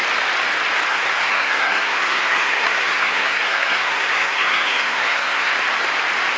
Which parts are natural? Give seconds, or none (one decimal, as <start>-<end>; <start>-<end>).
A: 0.0-0.9; 5.5-6.4